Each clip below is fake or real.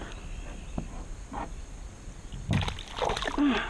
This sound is real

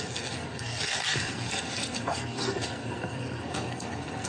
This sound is fake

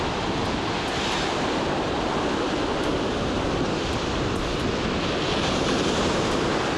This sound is real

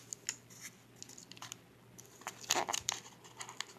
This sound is real